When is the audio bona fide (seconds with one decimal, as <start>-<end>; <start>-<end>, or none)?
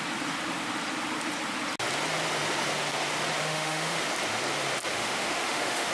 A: 0.0-3.4; 4.0-4.9